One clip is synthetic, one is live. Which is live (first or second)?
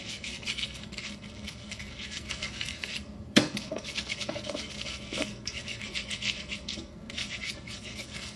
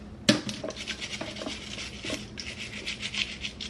second